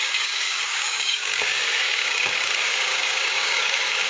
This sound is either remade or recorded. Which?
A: remade